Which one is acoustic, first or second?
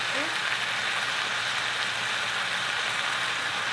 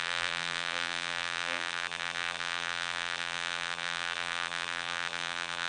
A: first